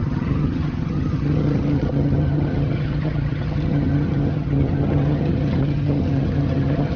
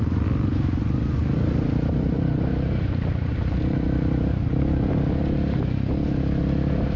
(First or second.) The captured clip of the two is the second